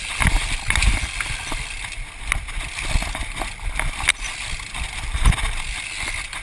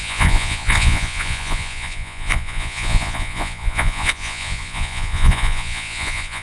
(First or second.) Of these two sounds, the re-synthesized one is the second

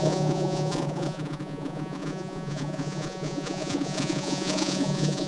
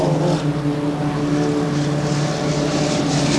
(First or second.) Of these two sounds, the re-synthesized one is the first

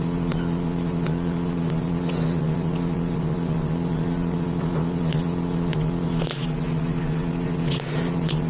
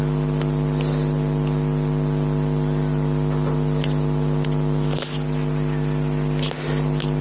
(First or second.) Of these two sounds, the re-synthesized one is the first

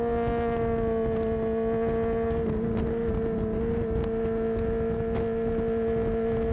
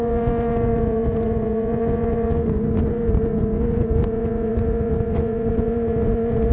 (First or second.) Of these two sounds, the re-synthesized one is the second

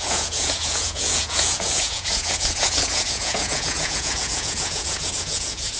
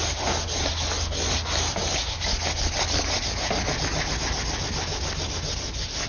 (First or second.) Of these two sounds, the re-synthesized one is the first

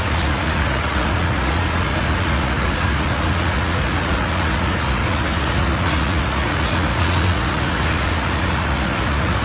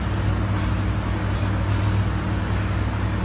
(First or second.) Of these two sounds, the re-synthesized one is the first